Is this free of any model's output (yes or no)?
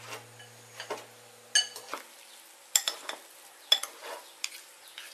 yes